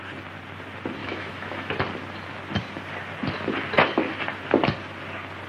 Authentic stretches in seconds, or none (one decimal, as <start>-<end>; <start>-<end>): 0.0-1.0; 1.7-5.5